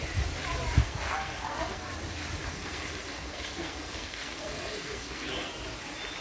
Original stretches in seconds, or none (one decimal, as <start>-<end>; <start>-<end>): 0.0-0.8; 1.9-2.4; 5.5-6.2